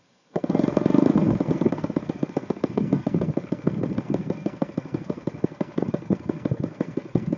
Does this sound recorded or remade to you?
remade